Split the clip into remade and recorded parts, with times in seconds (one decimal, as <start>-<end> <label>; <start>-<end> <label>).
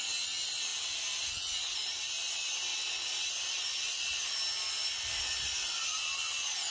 0.0-2.7 recorded; 2.7-5.2 remade; 5.2-6.7 recorded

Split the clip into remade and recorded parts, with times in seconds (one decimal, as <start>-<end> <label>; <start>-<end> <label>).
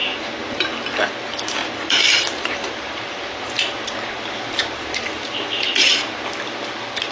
0.0-1.1 remade; 1.1-1.6 recorded; 1.6-5.9 remade; 5.9-7.1 recorded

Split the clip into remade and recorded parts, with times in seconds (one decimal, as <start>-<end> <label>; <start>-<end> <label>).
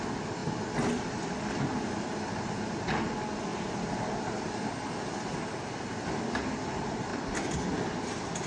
0.0-3.5 recorded; 3.5-4.2 remade; 4.2-8.5 recorded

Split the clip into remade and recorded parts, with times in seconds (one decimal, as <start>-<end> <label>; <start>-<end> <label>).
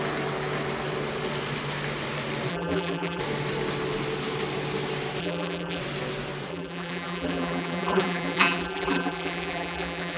0.0-2.5 recorded; 2.5-3.2 remade; 3.2-5.2 recorded; 5.2-5.8 remade; 5.8-6.5 recorded; 6.5-10.2 remade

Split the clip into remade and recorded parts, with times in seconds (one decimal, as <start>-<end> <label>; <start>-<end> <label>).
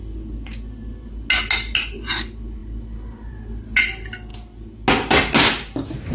0.0-6.1 recorded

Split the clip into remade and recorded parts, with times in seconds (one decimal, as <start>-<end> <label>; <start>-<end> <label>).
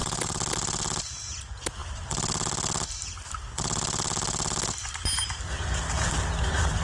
0.0-6.8 recorded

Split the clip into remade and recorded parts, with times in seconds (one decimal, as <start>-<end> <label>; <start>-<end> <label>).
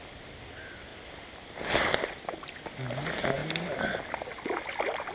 0.0-0.9 recorded; 0.9-2.2 remade; 2.2-5.1 recorded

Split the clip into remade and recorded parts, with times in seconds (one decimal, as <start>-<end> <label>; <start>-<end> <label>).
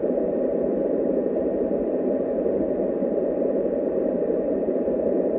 0.0-5.4 remade